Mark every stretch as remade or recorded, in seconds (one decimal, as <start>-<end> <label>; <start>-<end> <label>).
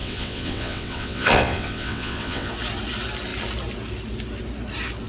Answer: 0.0-2.5 remade; 2.5-5.1 recorded